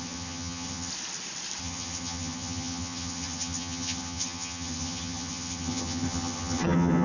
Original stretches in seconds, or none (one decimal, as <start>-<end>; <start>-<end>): 0.9-1.6